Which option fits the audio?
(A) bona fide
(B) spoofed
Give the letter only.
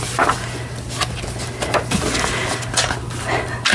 A